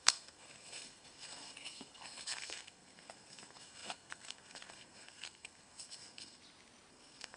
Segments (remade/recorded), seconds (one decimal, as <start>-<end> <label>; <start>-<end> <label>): 0.0-6.4 remade; 6.4-6.9 recorded; 6.9-7.4 remade